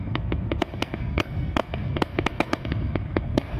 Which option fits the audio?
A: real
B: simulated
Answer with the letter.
B